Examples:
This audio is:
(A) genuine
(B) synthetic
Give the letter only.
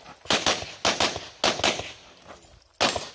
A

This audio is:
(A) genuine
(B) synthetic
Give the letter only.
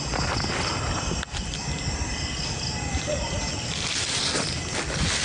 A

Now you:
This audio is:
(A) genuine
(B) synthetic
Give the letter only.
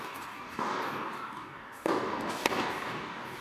B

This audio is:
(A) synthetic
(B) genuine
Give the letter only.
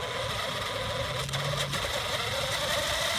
B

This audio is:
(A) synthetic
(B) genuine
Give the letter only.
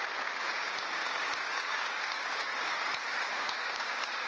A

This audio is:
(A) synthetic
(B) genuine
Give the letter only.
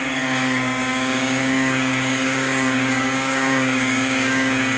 A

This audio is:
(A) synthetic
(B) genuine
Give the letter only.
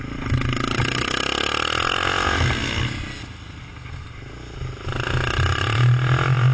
B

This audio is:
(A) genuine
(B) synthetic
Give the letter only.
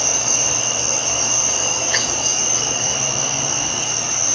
B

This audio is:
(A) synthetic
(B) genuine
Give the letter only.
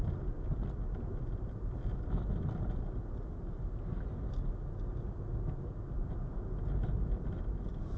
B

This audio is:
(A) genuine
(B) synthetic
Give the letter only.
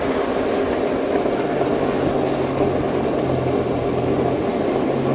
A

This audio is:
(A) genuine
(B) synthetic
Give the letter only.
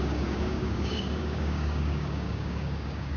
B